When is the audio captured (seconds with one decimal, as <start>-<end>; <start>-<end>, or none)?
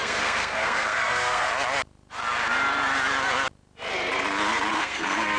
1.5-4.7